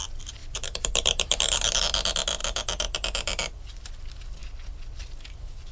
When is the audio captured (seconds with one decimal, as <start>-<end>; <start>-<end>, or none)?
0.0-0.4; 1.8-2.4; 4.0-5.7